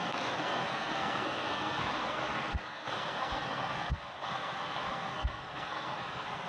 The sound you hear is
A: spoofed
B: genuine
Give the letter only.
A